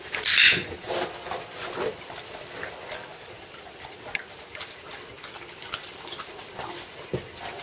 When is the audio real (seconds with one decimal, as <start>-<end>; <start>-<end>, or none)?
0.0-7.6